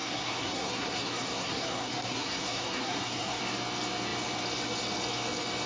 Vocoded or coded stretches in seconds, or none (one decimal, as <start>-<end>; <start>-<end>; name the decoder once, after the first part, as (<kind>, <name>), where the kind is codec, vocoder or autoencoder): 0.0-3.4 (codec, SNAC)